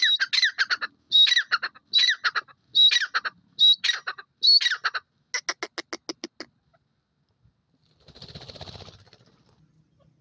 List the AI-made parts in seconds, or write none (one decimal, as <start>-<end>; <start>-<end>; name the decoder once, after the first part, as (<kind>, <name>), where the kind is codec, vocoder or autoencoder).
none